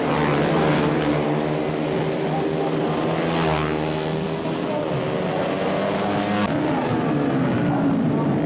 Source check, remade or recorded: recorded